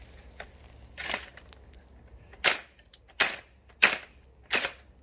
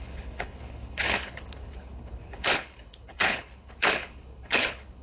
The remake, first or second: second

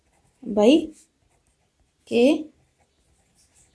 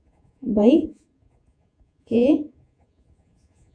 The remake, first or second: second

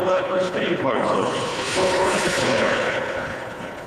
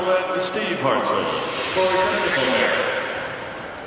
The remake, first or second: first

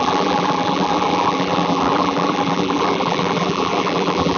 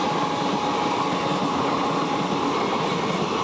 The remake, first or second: first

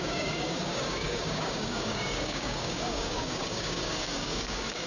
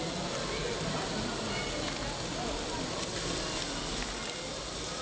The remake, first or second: first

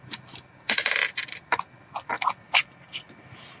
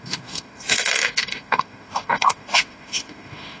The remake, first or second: second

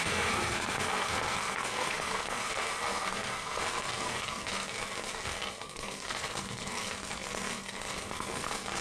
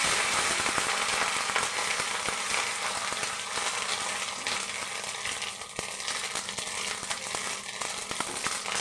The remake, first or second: first